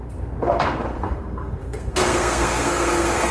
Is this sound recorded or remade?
remade